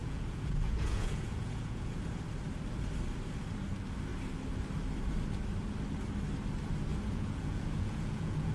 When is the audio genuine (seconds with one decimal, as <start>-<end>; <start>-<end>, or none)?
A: 2.0-6.9